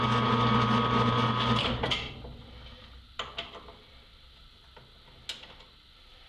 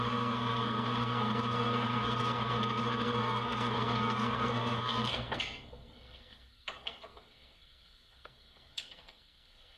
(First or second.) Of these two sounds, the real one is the first